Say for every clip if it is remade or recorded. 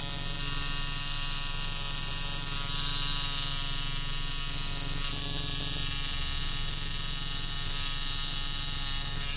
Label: recorded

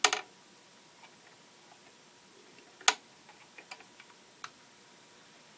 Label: recorded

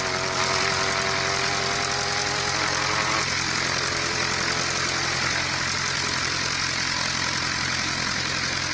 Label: recorded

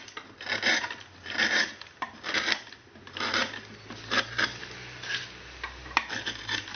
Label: recorded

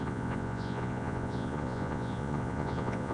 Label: remade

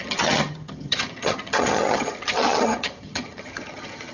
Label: remade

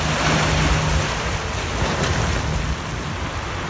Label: recorded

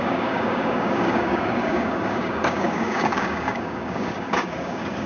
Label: remade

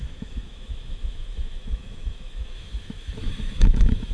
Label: remade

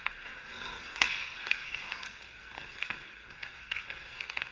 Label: remade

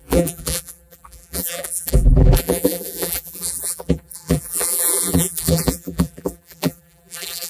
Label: remade